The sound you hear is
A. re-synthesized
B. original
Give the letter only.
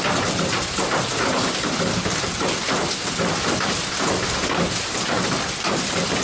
B